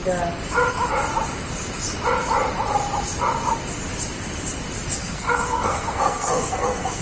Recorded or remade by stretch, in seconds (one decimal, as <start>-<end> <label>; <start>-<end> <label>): 0.0-5.0 recorded; 5.0-7.0 remade